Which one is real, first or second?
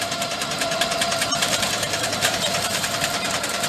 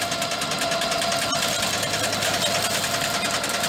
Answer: second